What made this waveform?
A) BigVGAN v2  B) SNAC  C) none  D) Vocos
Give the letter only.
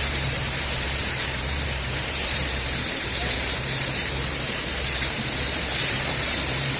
A